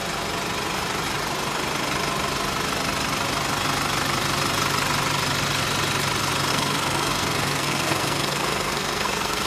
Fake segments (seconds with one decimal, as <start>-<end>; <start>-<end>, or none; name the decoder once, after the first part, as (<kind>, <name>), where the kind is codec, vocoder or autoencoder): 6.5-9.5 (codec, SNAC)